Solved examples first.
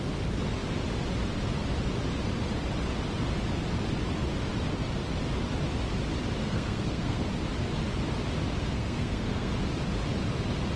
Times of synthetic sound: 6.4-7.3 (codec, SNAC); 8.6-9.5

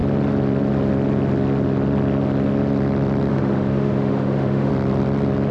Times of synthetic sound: 3.3-4.7 (autoencoder, DAC-VAE)

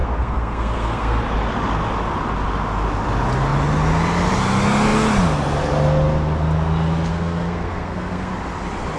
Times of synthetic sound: 0.0-1.2 (codec, SNAC); 7.1-8.3

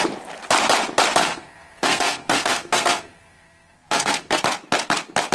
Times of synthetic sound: 1.2-4.4 (codec, SNAC)